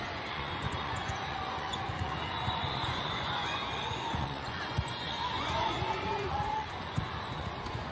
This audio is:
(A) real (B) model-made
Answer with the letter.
B